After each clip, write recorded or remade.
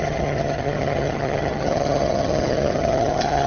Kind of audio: remade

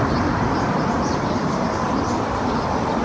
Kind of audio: recorded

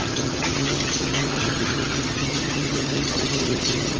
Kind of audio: remade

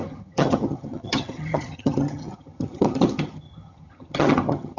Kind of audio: remade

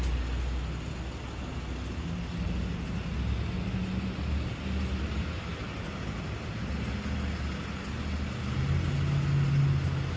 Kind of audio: recorded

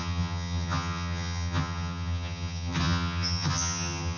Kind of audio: remade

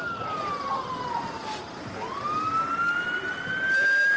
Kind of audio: recorded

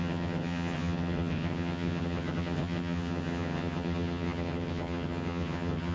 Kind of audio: remade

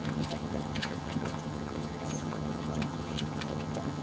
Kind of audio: remade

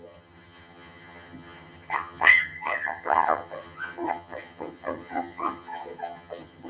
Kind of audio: remade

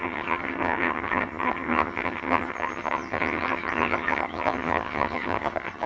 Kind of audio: remade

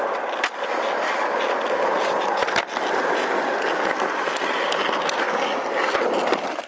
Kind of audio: recorded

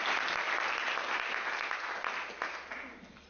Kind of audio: recorded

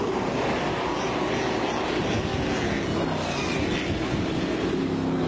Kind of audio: recorded